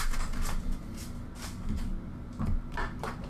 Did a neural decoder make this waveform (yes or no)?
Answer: no